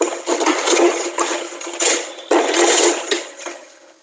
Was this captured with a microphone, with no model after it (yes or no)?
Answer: no